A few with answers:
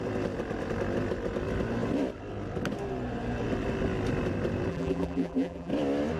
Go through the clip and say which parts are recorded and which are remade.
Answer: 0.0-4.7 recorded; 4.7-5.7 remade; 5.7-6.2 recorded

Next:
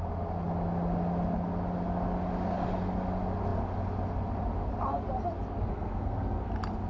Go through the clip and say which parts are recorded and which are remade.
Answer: 0.0-5.7 recorded; 5.7-6.5 remade; 6.5-6.9 recorded

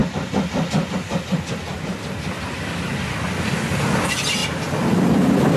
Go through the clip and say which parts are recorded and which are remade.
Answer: 0.0-5.6 recorded

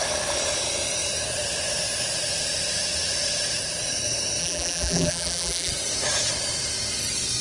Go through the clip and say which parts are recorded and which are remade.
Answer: 0.0-4.4 recorded; 4.4-5.7 remade; 5.7-7.4 recorded